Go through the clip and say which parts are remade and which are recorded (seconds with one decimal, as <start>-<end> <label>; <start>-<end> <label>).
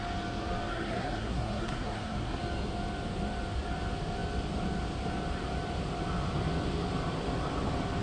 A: 0.0-0.7 recorded; 0.7-2.4 remade; 2.4-8.0 recorded